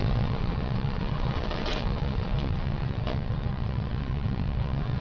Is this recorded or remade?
remade